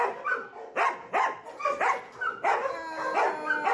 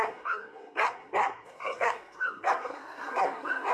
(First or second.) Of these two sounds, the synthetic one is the second